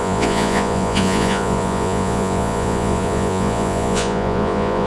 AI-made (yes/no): yes